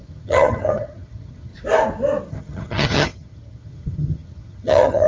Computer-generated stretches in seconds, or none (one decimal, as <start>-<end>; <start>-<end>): 0.0-1.5; 2.3-5.1